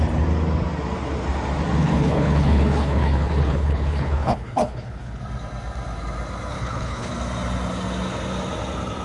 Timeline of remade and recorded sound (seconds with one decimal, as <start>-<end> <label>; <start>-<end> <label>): 0.0-1.8 recorded; 1.8-5.2 remade; 5.2-6.5 recorded; 6.5-7.1 remade; 7.1-9.0 recorded